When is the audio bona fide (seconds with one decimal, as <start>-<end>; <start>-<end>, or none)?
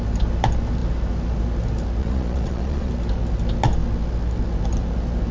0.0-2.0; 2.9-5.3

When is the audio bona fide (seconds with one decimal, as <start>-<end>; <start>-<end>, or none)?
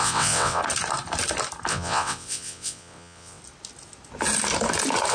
0.6-1.7; 3.4-5.1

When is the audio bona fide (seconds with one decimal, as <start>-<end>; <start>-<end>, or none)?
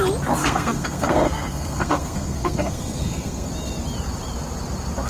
0.0-0.4; 3.5-5.1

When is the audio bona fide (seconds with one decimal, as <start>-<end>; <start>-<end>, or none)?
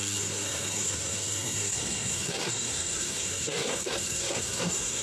none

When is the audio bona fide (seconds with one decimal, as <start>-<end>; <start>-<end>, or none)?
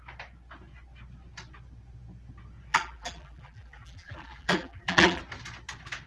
0.0-2.7; 5.2-6.1